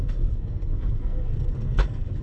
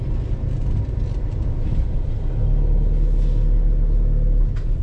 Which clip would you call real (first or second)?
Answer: second